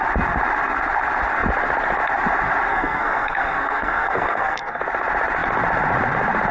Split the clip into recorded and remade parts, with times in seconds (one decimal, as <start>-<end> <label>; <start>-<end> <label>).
0.0-2.7 recorded; 2.7-4.8 remade; 4.8-6.5 recorded